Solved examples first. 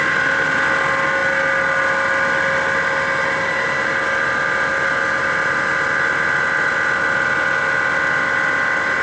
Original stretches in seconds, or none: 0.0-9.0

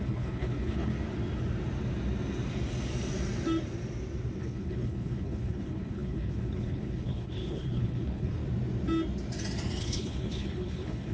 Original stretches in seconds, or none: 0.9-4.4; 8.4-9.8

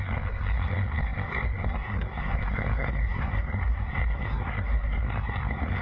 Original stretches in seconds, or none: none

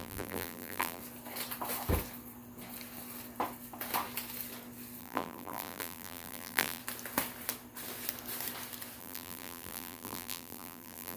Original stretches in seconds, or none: 1.0-5.0; 6.8-9.0

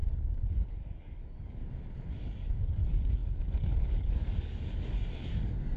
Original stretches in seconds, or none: 0.0-0.5; 1.6-2.2